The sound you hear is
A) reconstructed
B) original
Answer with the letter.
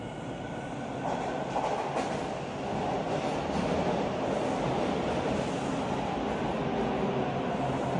B